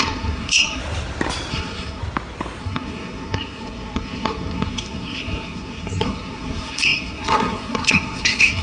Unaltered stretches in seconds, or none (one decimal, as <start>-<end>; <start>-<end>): 0.8-1.5; 2.0-2.6